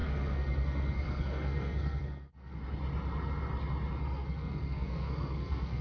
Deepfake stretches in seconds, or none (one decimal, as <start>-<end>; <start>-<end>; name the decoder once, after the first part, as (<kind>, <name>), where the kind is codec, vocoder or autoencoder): 0.0-2.6 (codec, SNAC); 4.0-5.8